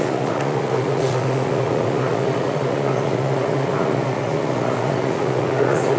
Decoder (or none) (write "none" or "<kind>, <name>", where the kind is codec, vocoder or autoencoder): vocoder, Vocos